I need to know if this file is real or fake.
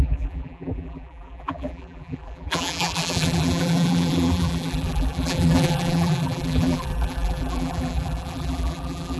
fake